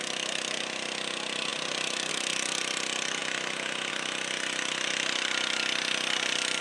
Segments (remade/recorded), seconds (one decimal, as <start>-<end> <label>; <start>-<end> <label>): 0.0-6.6 recorded